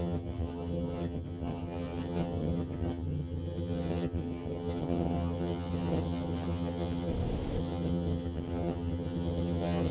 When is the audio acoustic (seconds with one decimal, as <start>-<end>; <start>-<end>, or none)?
7.1-7.6